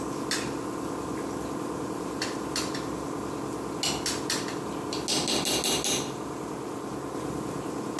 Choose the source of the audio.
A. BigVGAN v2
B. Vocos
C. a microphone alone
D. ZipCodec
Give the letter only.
C